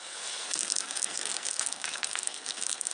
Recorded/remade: remade